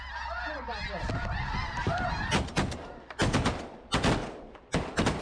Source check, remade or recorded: recorded